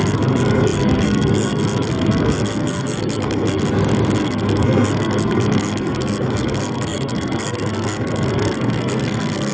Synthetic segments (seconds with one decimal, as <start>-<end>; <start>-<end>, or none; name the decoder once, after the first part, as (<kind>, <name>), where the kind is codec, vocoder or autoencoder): 0.0-3.6 (codec, SNAC); 4.2-9.5